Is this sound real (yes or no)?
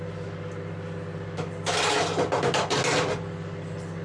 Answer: yes